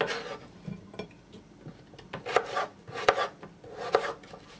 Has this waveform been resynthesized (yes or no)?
no